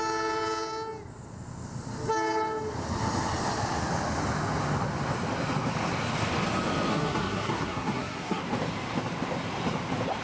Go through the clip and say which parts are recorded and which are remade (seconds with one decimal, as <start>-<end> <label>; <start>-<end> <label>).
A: 0.0-6.9 recorded; 6.9-8.4 remade; 8.4-10.2 recorded